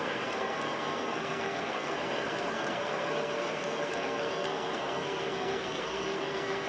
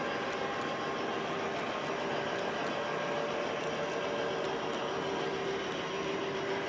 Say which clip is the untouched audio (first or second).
second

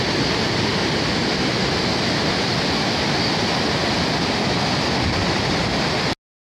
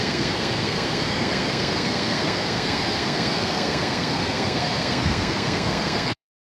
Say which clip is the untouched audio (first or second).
first